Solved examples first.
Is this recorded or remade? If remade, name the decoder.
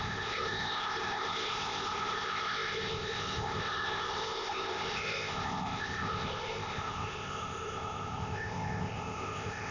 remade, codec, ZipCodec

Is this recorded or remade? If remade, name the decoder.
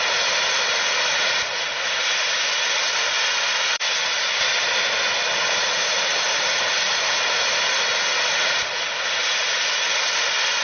recorded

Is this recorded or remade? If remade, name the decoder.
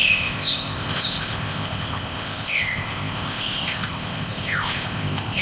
remade, codec, ZipCodec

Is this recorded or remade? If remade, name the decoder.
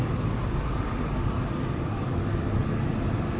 recorded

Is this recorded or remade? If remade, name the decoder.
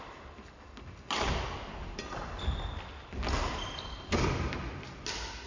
recorded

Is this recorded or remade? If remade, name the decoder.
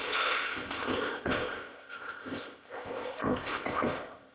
remade, codec, ZipCodec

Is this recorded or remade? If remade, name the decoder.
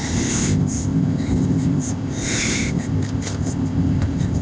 remade, codec, ZipCodec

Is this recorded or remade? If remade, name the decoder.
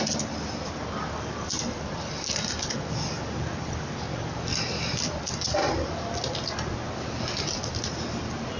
recorded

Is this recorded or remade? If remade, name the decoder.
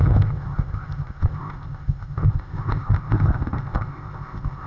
remade, codec, ZipCodec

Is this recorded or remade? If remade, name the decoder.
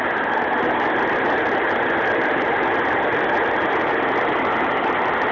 recorded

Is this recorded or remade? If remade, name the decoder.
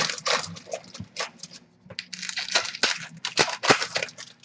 recorded